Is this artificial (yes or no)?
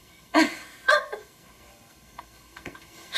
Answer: yes